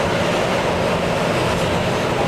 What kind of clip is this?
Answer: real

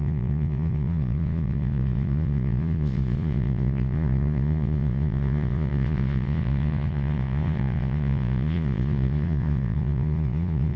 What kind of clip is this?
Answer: fake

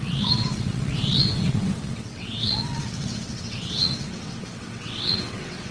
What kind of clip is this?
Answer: fake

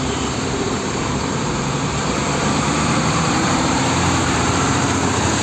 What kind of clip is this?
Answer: fake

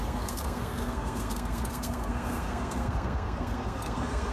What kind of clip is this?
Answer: fake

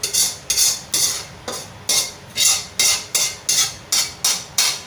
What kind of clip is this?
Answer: real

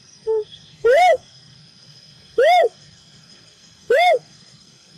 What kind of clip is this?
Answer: fake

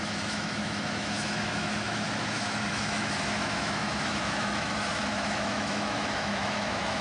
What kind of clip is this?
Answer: fake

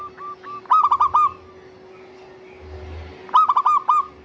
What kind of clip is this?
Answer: real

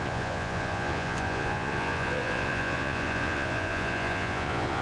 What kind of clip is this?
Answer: fake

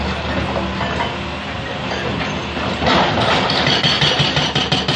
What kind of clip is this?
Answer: real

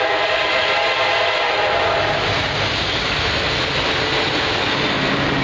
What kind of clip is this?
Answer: real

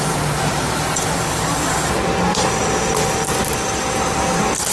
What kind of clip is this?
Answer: real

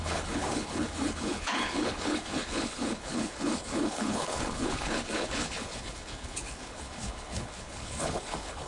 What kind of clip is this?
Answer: fake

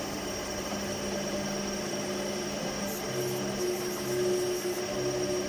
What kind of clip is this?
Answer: real